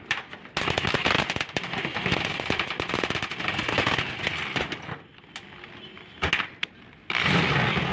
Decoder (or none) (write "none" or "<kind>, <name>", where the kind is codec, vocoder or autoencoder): none